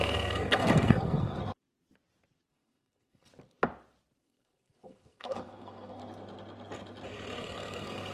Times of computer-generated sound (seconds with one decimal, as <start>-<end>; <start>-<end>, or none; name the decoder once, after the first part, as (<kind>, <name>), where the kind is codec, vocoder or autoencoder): 0.0-1.4 (codec, SNAC); 2.5-3.3; 4.2-6.0; 7.4-8.1